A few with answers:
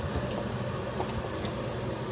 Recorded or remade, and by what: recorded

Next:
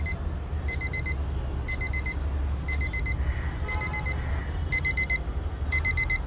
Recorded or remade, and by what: recorded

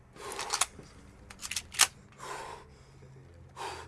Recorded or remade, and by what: recorded